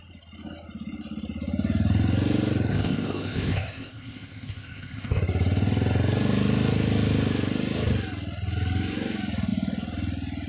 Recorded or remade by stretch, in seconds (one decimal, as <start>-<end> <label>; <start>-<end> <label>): 0.0-2.7 recorded; 2.7-5.2 remade; 5.2-10.5 recorded